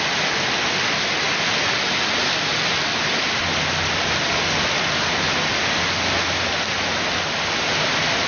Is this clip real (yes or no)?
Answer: yes